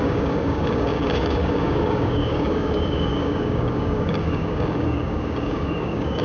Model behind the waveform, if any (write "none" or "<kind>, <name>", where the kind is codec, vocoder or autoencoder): codec, DAC